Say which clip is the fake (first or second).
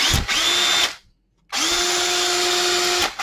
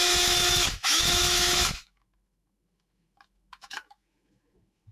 second